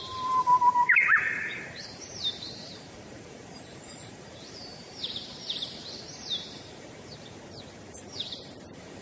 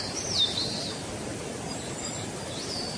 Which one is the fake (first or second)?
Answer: first